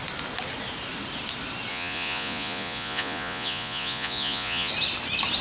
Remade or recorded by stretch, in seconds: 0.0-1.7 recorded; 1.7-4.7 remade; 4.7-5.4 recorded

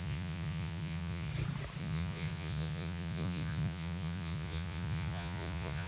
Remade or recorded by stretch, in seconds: 0.0-1.3 remade; 1.3-1.8 recorded; 1.8-5.9 remade